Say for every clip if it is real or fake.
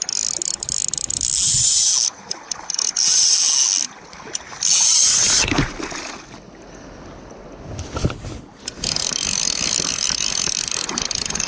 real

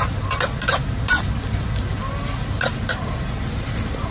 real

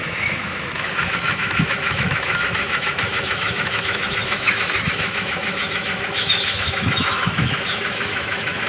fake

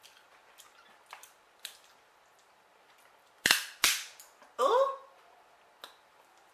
real